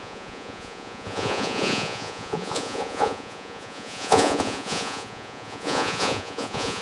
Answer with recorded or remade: remade